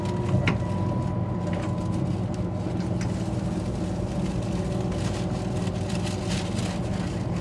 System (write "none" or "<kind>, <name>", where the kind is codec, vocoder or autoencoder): none